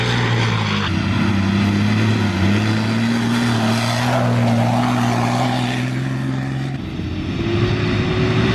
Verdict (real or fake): real